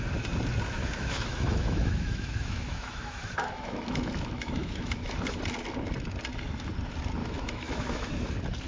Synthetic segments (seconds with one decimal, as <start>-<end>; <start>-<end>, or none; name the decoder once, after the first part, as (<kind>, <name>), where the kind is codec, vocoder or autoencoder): 0.8-5.4 (autoencoder, DAC-VAE); 7.2-8.1